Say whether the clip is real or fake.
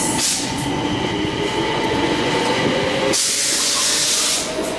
fake